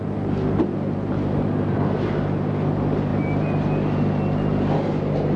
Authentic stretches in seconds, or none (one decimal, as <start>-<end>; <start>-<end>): 0.0-5.4